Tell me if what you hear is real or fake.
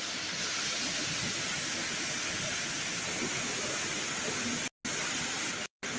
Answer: real